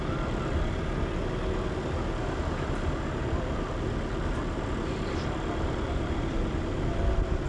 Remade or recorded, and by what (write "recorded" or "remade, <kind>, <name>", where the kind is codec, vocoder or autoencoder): recorded